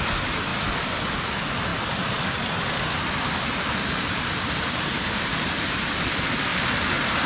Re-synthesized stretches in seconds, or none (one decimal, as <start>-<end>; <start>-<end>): 1.7-6.1; 6.5-7.3